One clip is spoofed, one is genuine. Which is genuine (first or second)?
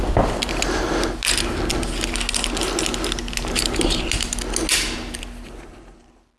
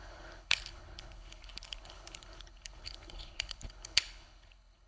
first